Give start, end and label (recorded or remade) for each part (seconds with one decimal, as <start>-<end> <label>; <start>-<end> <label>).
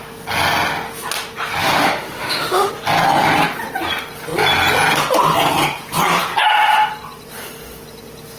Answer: 0.0-1.6 recorded; 1.6-2.7 remade; 2.7-8.4 recorded